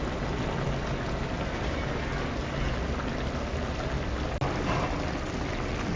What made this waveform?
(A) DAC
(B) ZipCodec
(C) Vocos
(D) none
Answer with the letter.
D